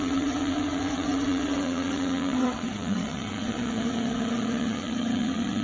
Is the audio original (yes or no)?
no